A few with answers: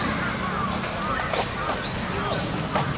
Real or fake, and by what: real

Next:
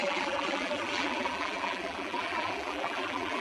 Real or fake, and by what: fake, vocoder, BigVGAN v2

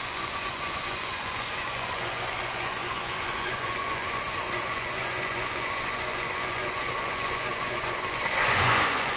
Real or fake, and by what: fake, vocoder, Vocos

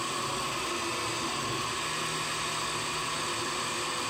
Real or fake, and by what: real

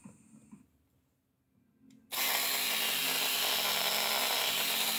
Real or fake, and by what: real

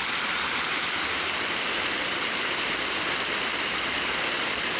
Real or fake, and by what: fake, vocoder, BigVGAN v2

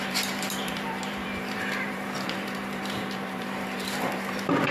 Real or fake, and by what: fake, vocoder, BigVGAN v2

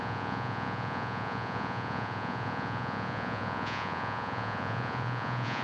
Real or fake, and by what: fake, vocoder, Vocos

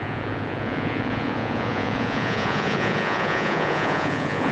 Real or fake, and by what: fake, vocoder, Vocos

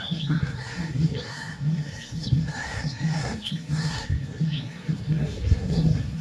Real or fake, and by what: fake, codec, SNAC